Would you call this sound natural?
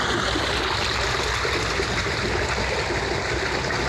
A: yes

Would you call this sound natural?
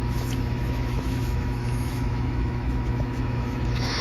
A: no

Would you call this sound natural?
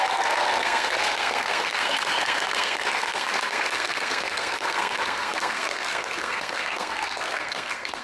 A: no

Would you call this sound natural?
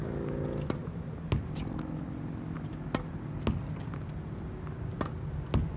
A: yes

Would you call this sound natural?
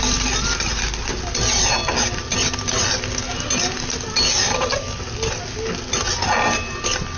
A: yes